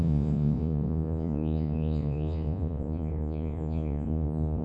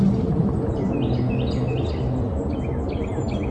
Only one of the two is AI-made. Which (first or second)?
first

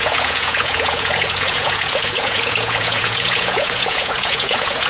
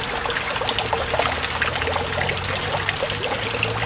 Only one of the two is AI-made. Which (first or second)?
first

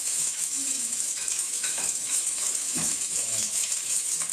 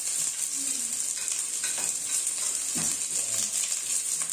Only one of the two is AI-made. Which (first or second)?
first